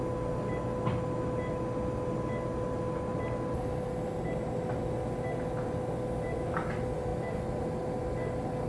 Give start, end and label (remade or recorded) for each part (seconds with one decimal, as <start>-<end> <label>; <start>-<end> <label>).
0.0-8.7 recorded